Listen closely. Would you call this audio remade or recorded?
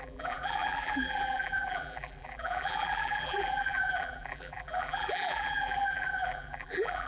remade